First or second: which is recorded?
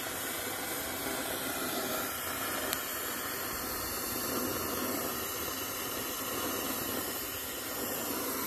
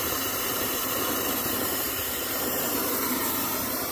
first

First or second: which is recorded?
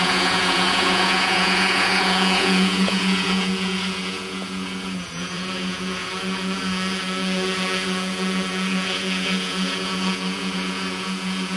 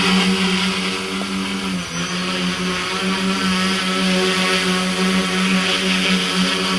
second